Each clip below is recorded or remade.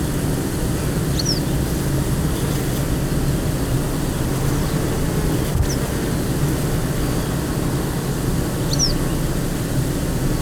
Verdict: recorded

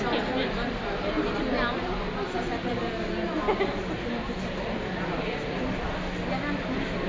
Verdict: recorded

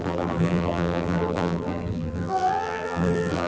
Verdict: remade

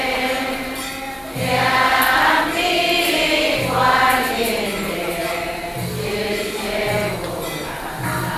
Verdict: recorded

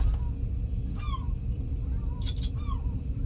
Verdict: remade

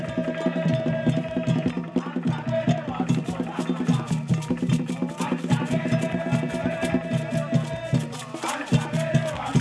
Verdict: recorded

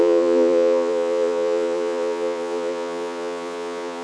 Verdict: remade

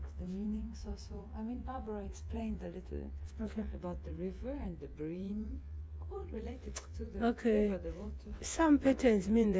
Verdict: remade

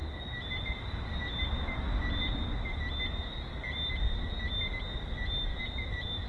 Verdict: recorded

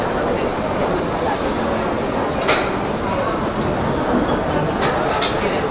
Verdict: recorded